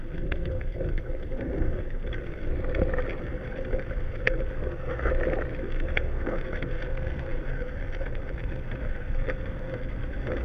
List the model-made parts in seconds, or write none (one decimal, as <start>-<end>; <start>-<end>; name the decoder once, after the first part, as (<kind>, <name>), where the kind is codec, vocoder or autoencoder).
0.0-2.5 (codec, SNAC); 3.2-5.1; 5.6-10.4